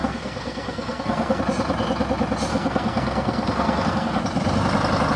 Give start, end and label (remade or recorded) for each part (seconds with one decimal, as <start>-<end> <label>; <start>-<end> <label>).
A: 0.0-1.4 remade; 1.4-2.5 recorded; 2.5-4.2 remade; 4.2-5.2 recorded